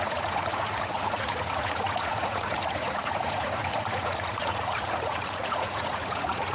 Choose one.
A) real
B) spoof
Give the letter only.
B